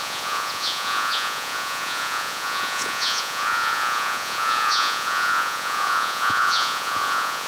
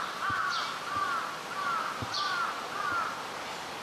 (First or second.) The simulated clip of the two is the first